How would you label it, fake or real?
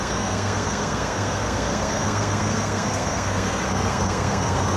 fake